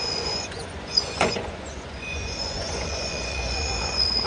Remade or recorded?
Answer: remade